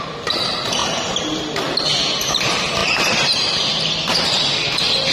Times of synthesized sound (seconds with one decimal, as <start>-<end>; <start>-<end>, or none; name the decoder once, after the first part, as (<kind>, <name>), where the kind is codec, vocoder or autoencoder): none